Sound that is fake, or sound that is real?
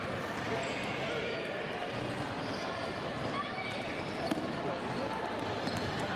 real